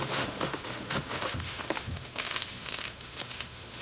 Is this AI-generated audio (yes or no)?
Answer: yes